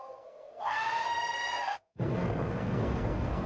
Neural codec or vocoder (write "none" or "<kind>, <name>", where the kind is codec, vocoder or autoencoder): codec, SNAC